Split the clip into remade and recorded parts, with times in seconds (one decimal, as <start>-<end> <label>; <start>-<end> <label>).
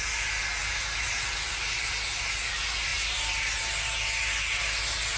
0.0-5.2 recorded